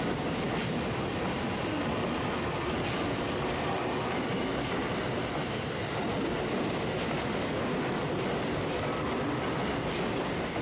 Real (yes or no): yes